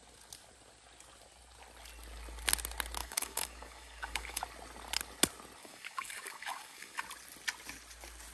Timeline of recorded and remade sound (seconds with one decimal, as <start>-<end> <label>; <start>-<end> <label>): 0.0-3.0 recorded; 3.0-4.4 remade; 4.4-5.6 recorded; 5.6-7.0 remade; 7.0-8.3 recorded